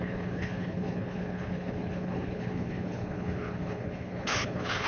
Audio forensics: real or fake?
fake